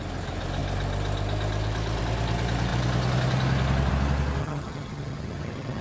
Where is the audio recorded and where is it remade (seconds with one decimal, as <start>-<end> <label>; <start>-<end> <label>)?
0.0-4.4 recorded; 4.4-5.8 remade